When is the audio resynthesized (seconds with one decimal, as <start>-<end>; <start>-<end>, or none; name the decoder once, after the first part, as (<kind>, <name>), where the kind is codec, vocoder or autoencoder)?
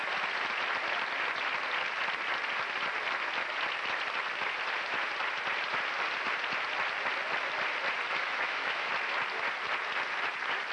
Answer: 8.1-8.9 (autoencoder, DAC-VAE)